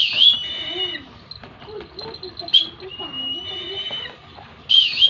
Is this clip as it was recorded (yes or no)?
yes